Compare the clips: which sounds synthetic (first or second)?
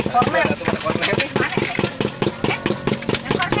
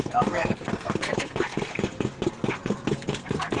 second